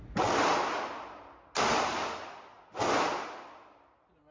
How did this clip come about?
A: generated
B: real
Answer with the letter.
B